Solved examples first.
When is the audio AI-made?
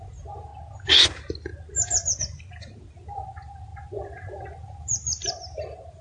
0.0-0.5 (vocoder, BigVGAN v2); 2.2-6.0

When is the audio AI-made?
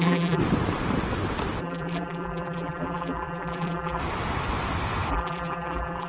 0.0-0.4 (vocoder, BigVGAN v2); 1.6-4.0; 5.1-6.1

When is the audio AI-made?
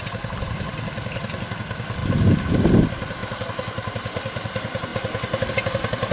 0.0-6.1 (vocoder, BigVGAN v2)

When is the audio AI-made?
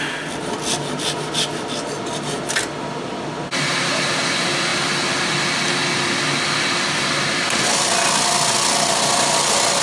none